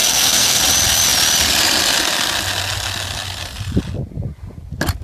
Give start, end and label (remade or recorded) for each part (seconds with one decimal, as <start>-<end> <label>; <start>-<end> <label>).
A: 0.0-0.6 remade; 0.6-5.0 recorded